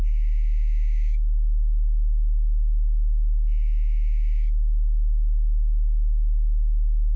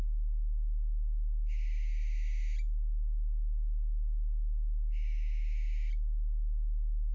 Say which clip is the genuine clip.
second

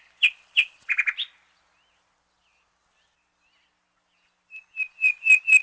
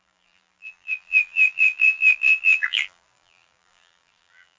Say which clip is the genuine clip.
first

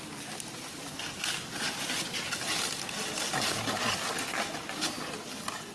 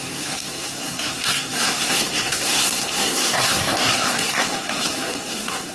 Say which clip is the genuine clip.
first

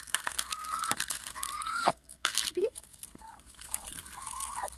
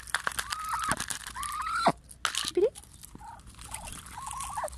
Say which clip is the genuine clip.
second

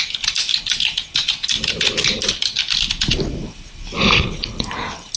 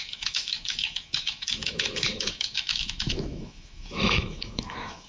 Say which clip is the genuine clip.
first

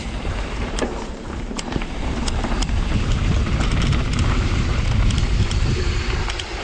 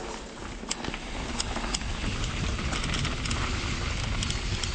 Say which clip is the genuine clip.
second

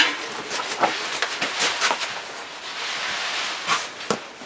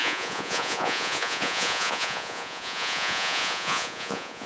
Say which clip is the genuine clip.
first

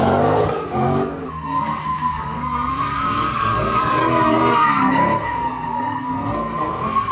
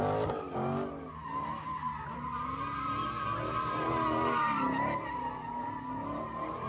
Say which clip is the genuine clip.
second